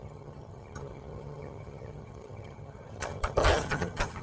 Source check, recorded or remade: remade